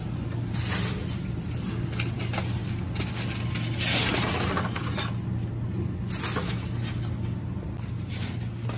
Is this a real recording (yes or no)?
yes